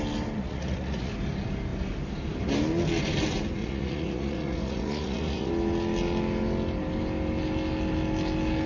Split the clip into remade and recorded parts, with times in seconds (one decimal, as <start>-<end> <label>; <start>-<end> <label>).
0.0-0.4 recorded; 0.4-1.1 remade; 1.1-3.6 recorded; 3.6-5.5 remade; 5.5-8.7 recorded